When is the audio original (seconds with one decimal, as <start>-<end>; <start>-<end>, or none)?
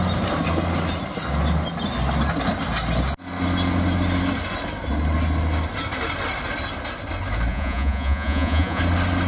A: 0.0-7.5; 8.8-9.3